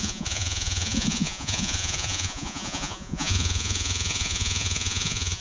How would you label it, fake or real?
fake